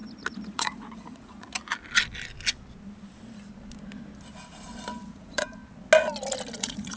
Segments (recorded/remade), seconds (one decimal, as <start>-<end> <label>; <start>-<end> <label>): 0.0-0.5 recorded; 0.5-1.5 remade; 1.5-5.1 recorded; 5.1-5.6 remade; 5.6-6.6 recorded; 6.6-7.0 remade